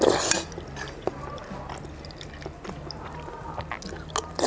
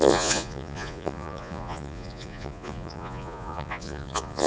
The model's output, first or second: second